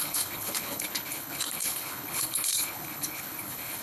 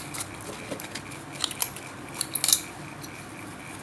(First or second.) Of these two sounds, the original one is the second